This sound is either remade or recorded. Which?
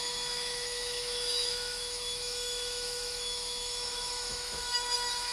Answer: remade